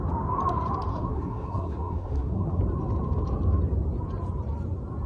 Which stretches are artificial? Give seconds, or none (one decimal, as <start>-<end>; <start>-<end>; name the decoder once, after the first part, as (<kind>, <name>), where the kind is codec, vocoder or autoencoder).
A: 0.9-2.6 (codec, SNAC)